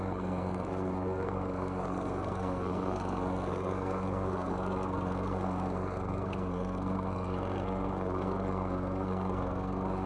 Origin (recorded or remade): remade